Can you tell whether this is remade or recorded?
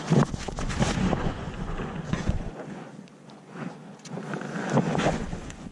remade